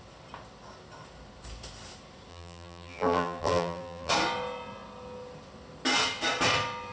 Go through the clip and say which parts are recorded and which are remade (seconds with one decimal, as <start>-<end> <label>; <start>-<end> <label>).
0.0-2.3 recorded; 2.3-4.1 remade; 4.1-6.9 recorded